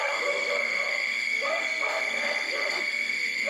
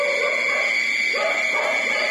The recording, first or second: second